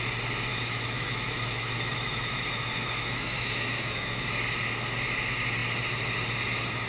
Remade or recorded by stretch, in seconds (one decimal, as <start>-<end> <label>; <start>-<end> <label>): 0.0-0.5 recorded; 0.5-4.3 remade; 4.3-6.9 recorded